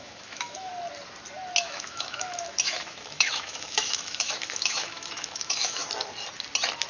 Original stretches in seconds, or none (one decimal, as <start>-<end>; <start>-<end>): 0.7-1.6; 5.8-6.9